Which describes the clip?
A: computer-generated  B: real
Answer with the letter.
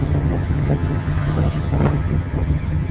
A